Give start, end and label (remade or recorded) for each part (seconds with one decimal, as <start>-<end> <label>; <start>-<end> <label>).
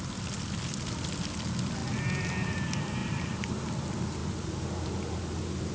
0.0-3.0 recorded; 3.0-3.6 remade; 3.6-5.7 recorded